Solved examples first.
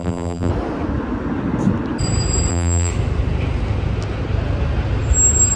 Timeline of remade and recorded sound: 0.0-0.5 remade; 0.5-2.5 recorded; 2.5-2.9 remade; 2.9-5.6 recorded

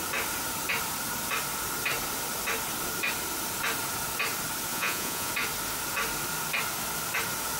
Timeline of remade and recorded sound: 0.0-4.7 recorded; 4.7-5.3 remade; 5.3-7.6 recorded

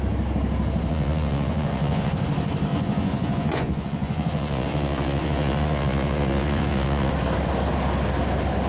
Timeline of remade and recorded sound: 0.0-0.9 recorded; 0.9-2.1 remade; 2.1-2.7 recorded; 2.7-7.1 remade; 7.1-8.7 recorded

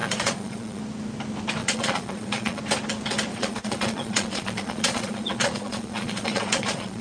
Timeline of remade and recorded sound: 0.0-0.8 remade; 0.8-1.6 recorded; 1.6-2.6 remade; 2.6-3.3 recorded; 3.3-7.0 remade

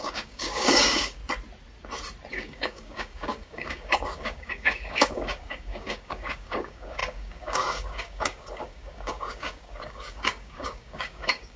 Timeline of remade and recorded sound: 0.0-1.2 remade; 1.2-2.3 recorded; 2.3-11.6 remade

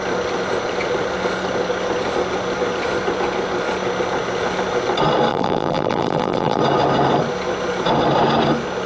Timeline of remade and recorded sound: 0.0-5.3 recorded; 5.3-6.6 remade; 6.6-8.9 recorded

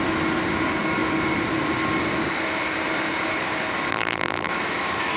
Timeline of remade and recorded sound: 0.0-3.9 recorded; 3.9-4.5 remade; 4.5-5.2 recorded